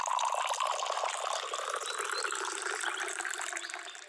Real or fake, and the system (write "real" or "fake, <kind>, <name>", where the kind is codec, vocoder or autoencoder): real